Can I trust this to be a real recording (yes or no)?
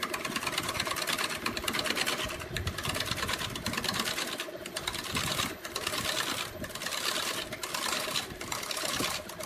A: yes